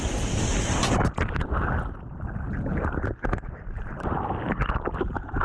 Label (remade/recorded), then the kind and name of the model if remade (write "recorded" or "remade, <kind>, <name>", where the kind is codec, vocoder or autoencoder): recorded